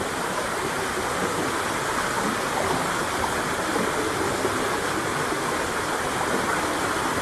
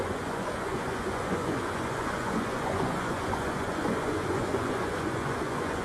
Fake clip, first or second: second